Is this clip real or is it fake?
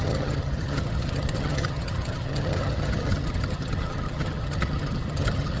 fake